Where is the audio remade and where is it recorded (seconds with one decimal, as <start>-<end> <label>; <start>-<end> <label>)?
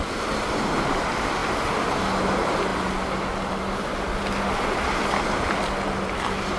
0.0-6.6 recorded